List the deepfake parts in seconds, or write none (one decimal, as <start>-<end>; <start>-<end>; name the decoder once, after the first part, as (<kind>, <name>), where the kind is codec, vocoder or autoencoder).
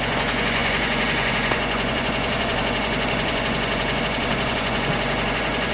0.0-5.7 (vocoder, Vocos)